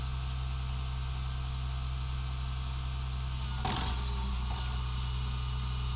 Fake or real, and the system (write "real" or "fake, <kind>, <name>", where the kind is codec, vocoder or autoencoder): real